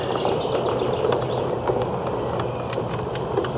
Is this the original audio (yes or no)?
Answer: yes